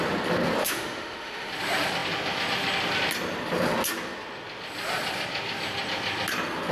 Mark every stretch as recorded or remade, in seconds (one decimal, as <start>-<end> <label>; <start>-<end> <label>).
0.0-0.6 recorded; 0.6-1.5 remade; 1.5-6.7 recorded